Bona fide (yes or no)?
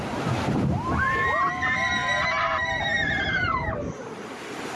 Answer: no